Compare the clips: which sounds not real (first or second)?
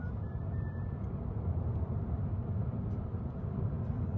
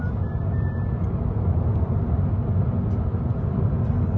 first